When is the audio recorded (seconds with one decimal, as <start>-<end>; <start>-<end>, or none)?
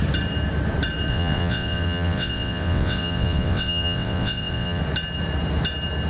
0.0-1.1; 4.8-6.1